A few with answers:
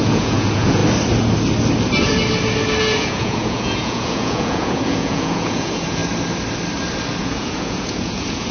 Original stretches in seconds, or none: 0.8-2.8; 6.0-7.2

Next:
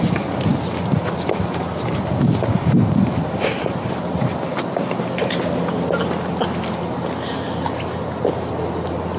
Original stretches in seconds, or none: 0.0-9.2

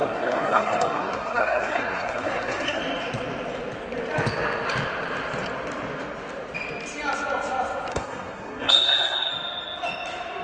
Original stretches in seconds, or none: 2.8-7.9; 9.3-10.4

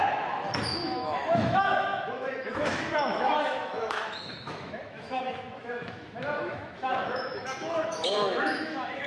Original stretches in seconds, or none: none

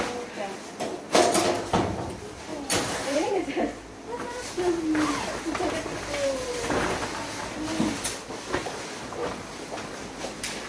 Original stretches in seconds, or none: 0.0-2.5; 7.4-9.2; 10.0-10.7

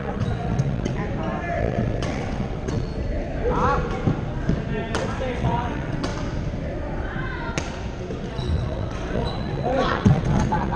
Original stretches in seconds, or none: 1.0-1.6; 2.9-5.3; 6.1-8.3

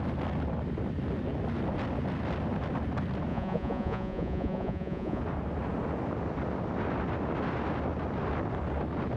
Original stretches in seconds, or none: 0.0-3.3; 5.2-9.2

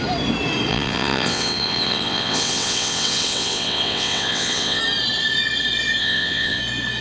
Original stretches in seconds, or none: 0.0-0.7; 4.8-6.0; 6.6-7.0